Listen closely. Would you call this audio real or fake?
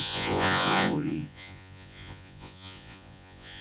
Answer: fake